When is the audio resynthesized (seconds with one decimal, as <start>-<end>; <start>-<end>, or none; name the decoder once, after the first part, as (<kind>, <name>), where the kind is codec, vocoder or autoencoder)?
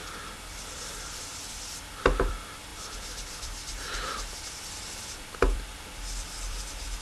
0.0-7.0 (vocoder, BigVGAN v2)